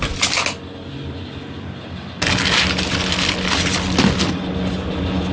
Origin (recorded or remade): recorded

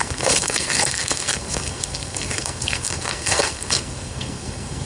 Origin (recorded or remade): remade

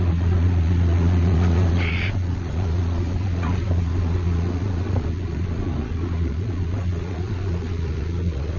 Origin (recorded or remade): remade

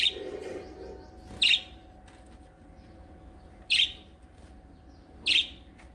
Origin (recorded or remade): recorded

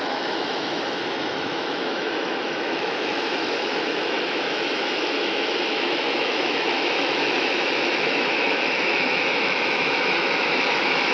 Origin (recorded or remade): remade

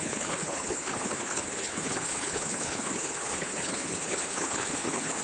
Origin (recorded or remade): remade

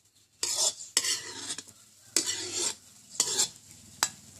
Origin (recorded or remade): recorded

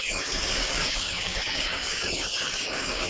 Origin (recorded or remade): remade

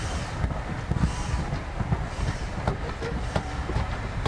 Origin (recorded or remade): remade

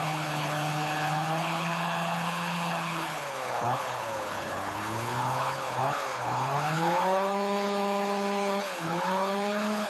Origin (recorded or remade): remade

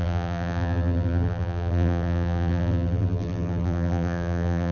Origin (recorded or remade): remade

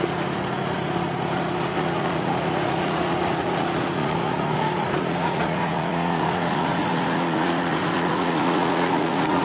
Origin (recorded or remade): remade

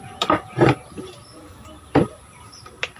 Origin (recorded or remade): remade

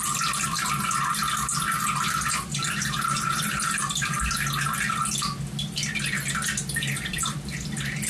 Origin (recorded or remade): recorded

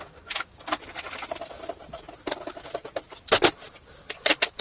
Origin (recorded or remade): recorded